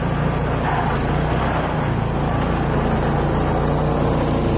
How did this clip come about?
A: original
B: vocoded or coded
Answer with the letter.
A